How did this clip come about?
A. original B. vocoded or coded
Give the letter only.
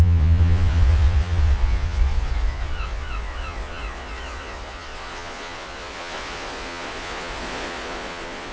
B